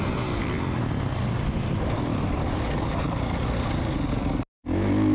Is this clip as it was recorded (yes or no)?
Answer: yes